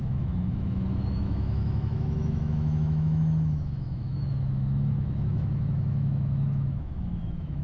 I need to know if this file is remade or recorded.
remade